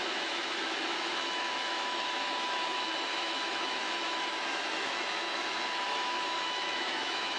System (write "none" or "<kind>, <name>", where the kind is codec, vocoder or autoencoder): autoencoder, DAC-VAE